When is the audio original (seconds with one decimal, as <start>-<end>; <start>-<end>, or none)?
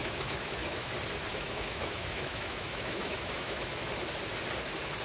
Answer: 0.9-1.3; 3.7-5.0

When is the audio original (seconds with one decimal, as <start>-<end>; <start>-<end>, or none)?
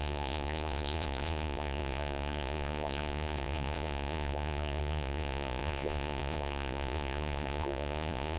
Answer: none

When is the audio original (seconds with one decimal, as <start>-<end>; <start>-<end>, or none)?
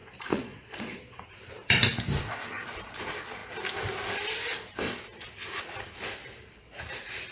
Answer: 1.2-7.3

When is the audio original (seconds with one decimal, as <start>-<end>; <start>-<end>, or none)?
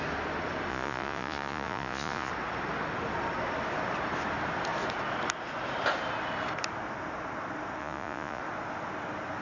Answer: 0.0-0.7; 2.3-7.8; 8.4-9.4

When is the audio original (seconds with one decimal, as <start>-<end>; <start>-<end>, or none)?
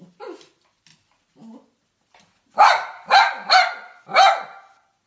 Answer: 0.0-5.1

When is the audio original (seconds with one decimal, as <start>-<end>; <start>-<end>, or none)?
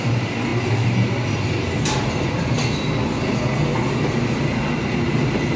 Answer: 0.0-5.6